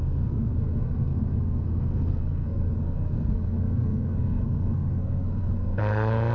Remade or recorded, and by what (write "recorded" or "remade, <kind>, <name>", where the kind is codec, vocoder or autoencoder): remade, codec, SNAC